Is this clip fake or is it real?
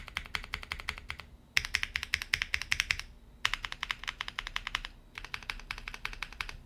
real